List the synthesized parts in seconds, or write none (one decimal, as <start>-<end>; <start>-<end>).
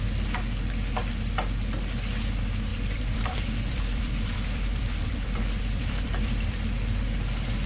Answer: 2.7-6.7